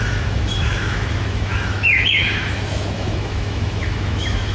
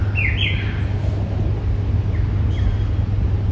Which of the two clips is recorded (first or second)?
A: second